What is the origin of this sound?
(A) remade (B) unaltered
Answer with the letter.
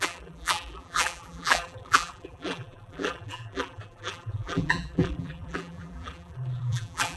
A